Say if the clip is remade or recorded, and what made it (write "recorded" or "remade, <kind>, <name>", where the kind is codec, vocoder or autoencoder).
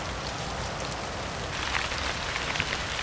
remade, vocoder, BigVGAN v2